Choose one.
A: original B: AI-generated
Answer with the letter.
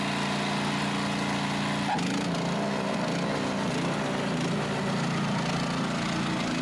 A